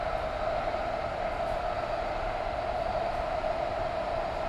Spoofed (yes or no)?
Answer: no